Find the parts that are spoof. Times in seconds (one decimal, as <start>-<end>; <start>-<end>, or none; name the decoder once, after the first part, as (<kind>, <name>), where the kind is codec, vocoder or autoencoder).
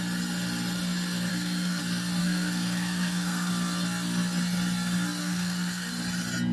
1.3-1.8 (codec, SNAC); 2.2-3.5; 5.2-5.9